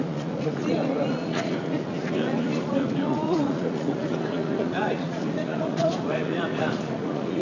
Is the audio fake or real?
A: fake